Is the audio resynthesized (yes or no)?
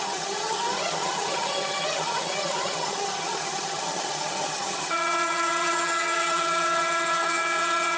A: yes